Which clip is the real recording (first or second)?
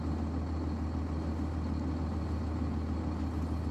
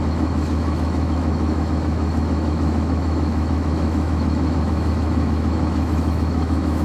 first